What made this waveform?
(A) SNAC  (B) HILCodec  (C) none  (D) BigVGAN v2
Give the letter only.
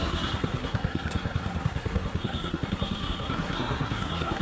A